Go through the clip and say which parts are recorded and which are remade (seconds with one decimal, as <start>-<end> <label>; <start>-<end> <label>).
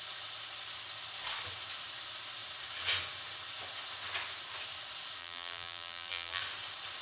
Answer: 0.0-5.2 recorded; 5.2-6.4 remade; 6.4-7.0 recorded